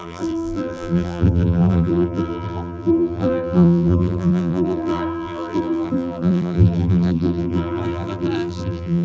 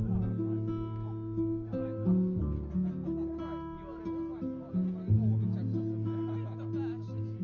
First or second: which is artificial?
first